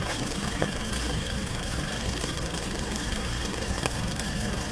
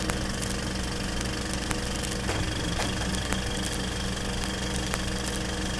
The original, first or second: second